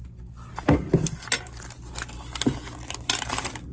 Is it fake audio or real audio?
real